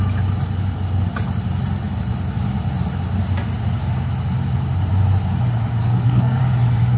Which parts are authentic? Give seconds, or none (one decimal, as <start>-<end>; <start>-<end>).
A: 0.0-5.8; 6.4-7.0